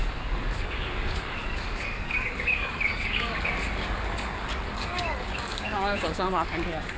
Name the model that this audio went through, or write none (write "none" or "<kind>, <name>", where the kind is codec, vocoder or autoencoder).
codec, DAC